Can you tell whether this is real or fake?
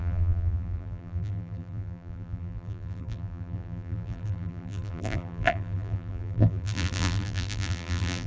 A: fake